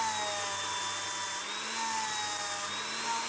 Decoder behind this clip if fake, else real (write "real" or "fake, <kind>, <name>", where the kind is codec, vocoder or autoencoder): real